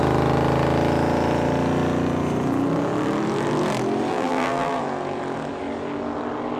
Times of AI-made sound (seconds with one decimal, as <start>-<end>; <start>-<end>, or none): 4.1-4.8